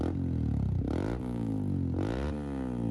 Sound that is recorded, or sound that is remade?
recorded